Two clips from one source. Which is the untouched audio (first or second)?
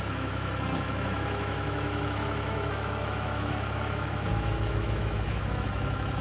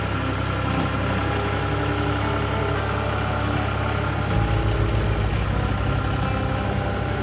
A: second